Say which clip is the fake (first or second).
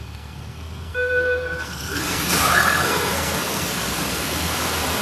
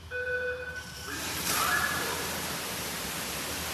first